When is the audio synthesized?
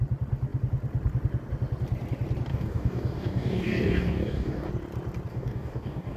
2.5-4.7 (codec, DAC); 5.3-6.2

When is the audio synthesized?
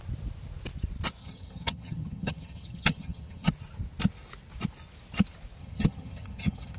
1.2-3.5 (vocoder, HiFi-GAN); 5.6-6.8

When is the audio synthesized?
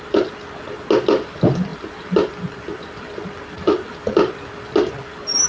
none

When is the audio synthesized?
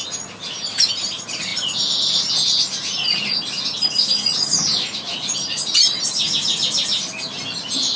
none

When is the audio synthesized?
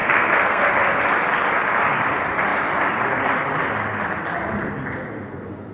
0.0-0.7 (codec, SNAC)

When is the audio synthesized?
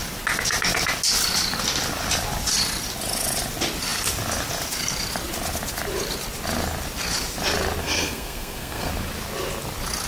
7.8-8.9 (codec, SNAC)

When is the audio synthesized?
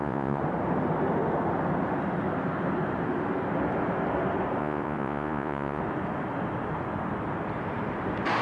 0.0-0.4 (vocoder, Vocos); 4.6-5.8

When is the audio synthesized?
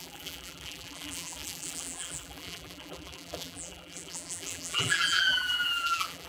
0.0-6.3 (vocoder, BigVGAN v2)